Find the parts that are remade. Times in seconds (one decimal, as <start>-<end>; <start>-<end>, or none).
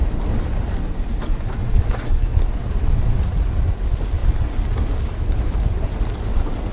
1.6-2.1; 2.6-3.3